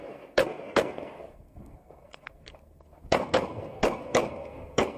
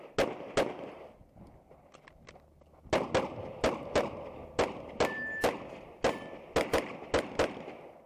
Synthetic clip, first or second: first